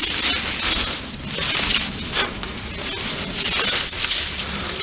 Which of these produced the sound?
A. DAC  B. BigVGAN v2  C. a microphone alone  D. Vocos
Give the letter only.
C